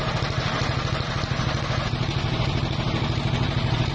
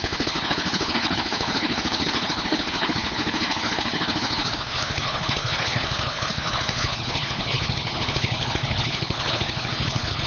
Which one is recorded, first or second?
first